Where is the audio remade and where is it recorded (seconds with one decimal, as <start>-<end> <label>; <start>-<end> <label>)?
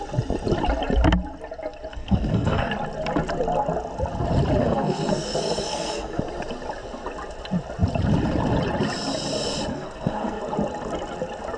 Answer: 0.0-1.9 recorded; 1.9-2.7 remade; 2.7-4.6 recorded; 4.6-6.2 remade; 6.2-9.7 recorded; 9.7-10.4 remade; 10.4-11.6 recorded